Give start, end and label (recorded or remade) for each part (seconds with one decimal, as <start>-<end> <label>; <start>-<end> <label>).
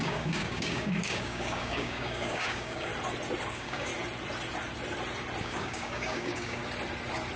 0.0-2.9 remade; 2.9-3.5 recorded; 3.5-3.9 remade; 3.9-5.4 recorded; 5.4-6.6 remade; 6.6-7.4 recorded